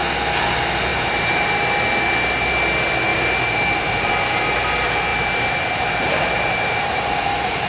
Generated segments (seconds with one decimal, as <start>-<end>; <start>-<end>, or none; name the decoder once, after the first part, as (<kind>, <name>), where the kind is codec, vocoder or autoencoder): 0.9-1.5 (vocoder, BigVGAN v2); 3.1-4.1; 5.1-7.7